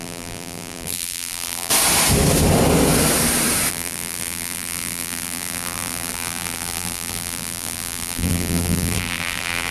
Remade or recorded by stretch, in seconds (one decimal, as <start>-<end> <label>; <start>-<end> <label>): 0.0-1.7 remade; 1.7-3.7 recorded; 3.7-9.7 remade